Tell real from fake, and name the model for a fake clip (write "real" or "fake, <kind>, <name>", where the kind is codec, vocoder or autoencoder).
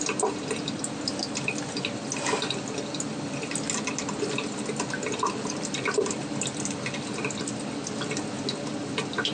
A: real